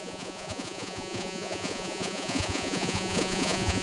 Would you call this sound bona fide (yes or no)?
no